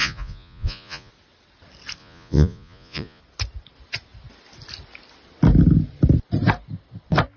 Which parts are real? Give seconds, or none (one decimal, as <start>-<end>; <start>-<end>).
1.1-2.0; 3.2-7.4